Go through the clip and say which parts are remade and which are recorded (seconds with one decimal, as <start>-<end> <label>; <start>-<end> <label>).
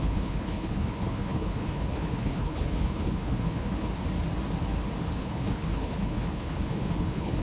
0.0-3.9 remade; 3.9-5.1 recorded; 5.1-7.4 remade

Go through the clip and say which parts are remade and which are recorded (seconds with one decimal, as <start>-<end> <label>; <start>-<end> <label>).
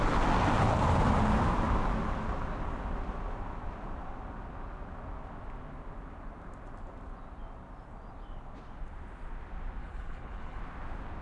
0.0-9.8 recorded; 9.8-10.6 remade; 10.6-11.2 recorded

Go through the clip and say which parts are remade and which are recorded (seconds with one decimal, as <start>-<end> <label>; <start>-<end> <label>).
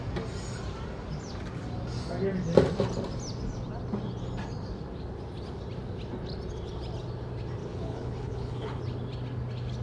0.0-7.6 recorded; 7.6-8.8 remade; 8.8-9.8 recorded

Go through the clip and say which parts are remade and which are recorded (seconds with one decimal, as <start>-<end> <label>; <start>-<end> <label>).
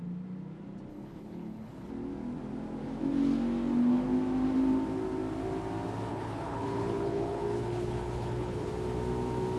0.0-0.9 recorded; 0.9-1.9 remade; 1.9-6.1 recorded; 6.1-8.7 remade; 8.7-9.6 recorded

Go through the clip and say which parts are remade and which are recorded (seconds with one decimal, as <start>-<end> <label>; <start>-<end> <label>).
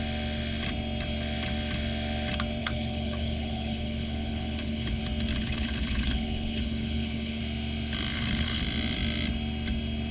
0.0-2.6 recorded; 2.6-5.0 remade; 5.0-5.4 recorded; 5.4-7.4 remade; 7.4-8.1 recorded; 8.1-8.6 remade; 8.6-10.1 recorded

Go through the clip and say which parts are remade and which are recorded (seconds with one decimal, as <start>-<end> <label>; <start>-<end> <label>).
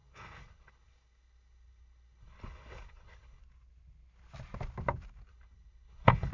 0.0-3.4 remade; 3.4-5.3 recorded; 5.3-6.3 remade